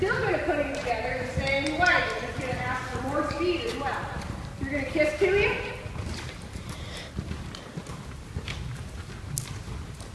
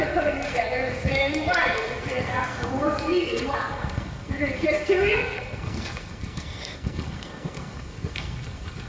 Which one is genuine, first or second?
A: first